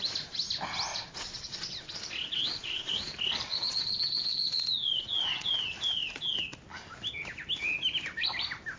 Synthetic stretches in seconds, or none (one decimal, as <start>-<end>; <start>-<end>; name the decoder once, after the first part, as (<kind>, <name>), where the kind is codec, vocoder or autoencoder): 0.9-1.9 (vocoder, Vocos); 2.4-3.1; 3.5-5.5